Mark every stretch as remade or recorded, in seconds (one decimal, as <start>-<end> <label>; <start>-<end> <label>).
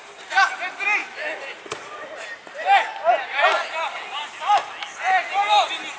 0.0-6.0 recorded